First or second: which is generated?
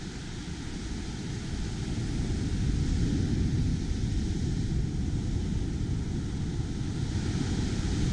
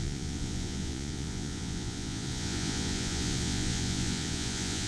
second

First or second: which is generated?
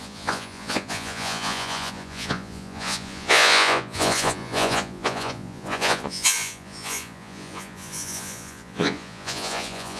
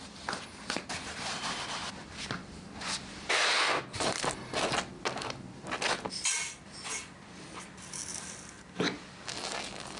first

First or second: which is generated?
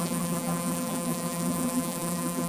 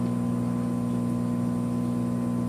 first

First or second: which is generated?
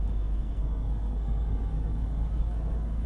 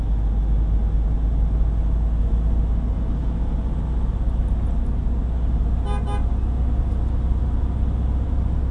first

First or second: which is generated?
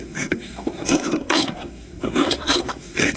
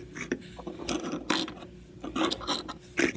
first